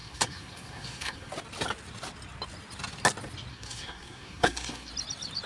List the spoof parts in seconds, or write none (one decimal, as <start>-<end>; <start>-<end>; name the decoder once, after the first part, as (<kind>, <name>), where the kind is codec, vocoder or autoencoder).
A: 0.0-1.3 (codec, SNAC); 3.5-4.9